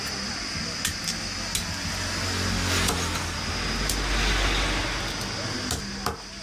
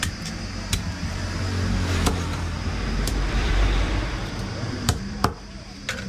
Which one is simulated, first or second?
second